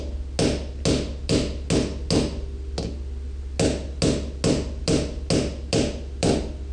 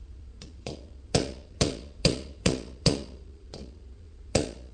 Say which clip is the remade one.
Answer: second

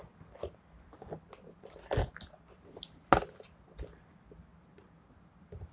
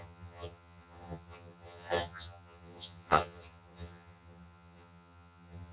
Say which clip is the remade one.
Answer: second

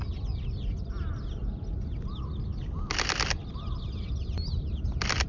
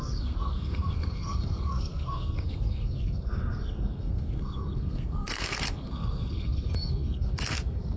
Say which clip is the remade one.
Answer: second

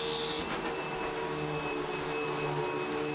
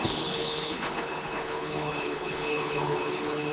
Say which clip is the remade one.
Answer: second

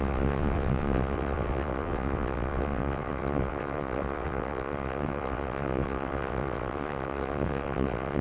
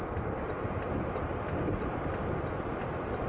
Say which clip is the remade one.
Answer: first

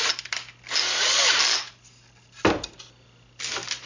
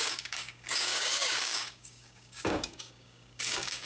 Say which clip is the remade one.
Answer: second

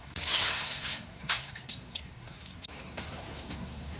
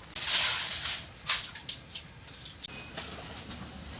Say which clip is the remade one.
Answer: first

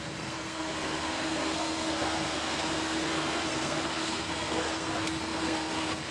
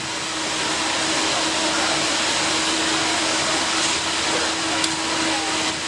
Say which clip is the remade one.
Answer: first